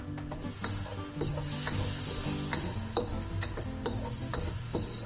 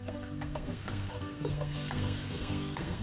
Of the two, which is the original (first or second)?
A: first